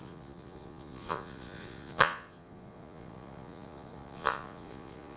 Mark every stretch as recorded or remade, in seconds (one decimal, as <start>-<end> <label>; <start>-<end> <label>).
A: 0.0-5.2 remade